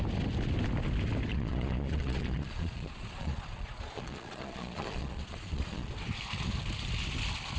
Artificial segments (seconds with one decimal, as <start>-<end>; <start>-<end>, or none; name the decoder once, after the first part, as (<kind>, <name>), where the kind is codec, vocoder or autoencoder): 1.3-5.9 (vocoder, Vocos)